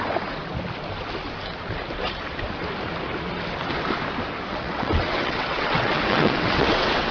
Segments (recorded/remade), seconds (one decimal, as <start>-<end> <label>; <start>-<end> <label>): 0.0-4.5 recorded; 4.5-7.1 remade